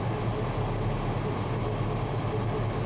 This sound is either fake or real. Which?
real